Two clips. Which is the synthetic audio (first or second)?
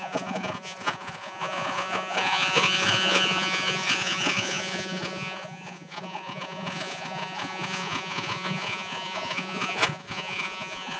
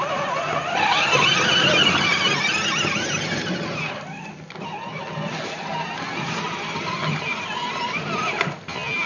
first